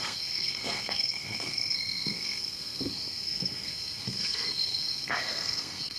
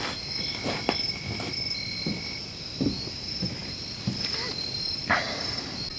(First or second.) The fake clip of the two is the first